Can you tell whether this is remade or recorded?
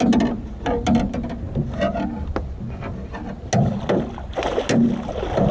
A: recorded